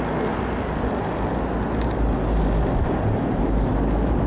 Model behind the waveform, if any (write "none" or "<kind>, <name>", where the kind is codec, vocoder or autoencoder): none